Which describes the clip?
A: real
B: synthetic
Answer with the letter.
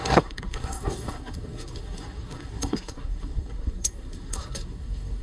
B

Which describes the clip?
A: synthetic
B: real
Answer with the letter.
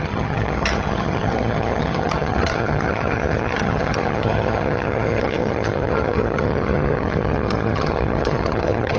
A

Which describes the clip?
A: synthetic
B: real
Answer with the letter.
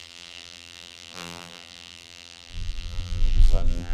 A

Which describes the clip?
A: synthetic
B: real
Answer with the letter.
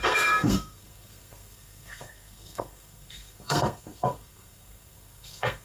A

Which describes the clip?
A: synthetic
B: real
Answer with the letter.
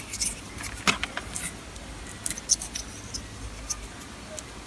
B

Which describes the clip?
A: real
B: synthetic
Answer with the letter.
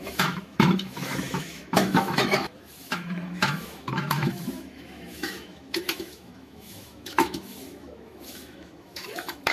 B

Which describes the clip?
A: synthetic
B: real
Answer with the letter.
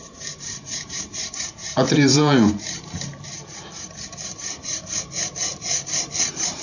A